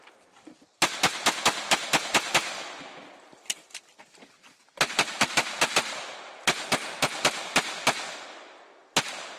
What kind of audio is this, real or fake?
fake